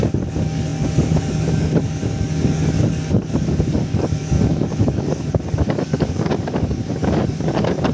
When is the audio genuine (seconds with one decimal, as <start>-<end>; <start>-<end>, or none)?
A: none